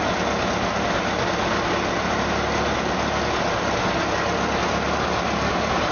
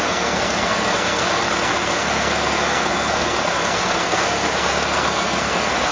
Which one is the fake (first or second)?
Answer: second